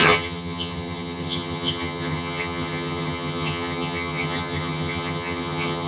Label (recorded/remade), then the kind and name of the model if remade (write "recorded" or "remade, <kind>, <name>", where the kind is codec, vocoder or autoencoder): remade, vocoder, HiFi-GAN